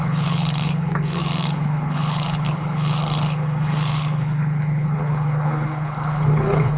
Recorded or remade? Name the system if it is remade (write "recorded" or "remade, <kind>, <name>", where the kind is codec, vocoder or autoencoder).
remade, codec, HILCodec